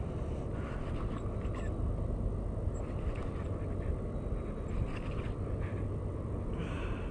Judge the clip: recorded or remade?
recorded